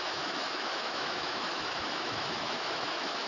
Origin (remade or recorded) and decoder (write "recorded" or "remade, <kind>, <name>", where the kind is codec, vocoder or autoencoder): remade, autoencoder, DAC-VAE